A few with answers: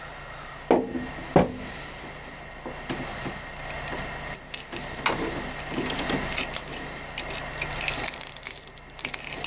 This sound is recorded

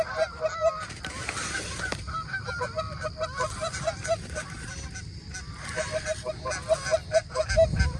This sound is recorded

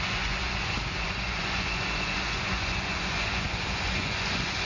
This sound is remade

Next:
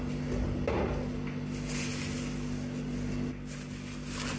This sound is recorded